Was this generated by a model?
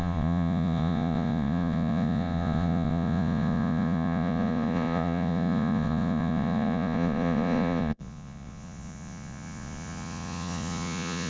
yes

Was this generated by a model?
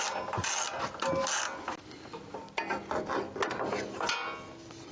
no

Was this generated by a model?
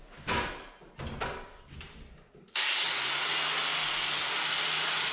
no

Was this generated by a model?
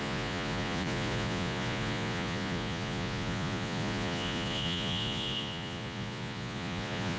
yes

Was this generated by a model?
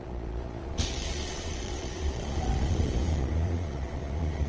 yes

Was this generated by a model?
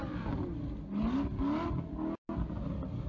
no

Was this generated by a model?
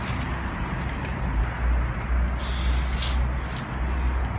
no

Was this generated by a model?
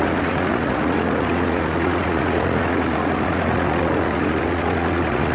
yes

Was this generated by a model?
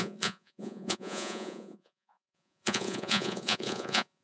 yes